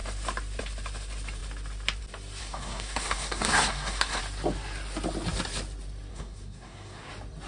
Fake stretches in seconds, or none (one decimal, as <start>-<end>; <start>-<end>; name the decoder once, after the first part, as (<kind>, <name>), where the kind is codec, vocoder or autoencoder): 2.4-4.2 (codec, SNAC); 6.1-7.1